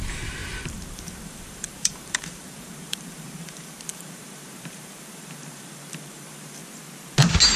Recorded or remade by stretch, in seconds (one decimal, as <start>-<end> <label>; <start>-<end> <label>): 0.0-6.6 remade; 6.6-7.6 recorded